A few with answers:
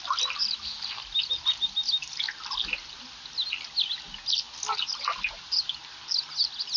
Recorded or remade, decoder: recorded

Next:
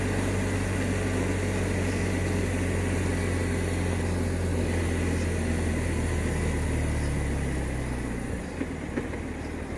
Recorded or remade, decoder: recorded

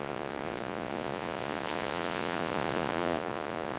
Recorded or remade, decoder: remade, vocoder, Vocos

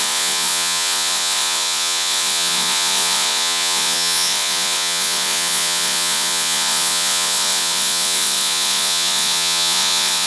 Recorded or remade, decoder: remade, vocoder, Vocos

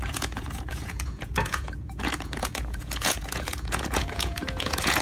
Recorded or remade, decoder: remade, vocoder, Vocos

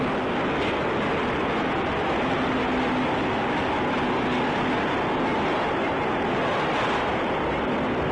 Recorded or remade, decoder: recorded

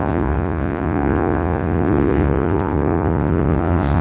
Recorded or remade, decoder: remade, vocoder, Vocos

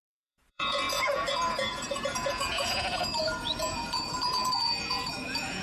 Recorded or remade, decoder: remade, vocoder, Vocos